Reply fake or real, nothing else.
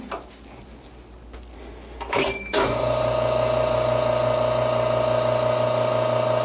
real